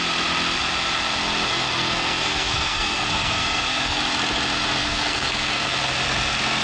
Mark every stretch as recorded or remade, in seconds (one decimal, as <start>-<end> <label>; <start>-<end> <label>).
0.0-1.5 recorded; 1.5-4.0 remade; 4.0-4.8 recorded; 4.8-5.8 remade; 5.8-6.6 recorded